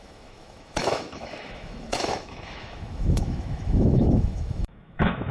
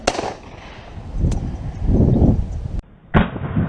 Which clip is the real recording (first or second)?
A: second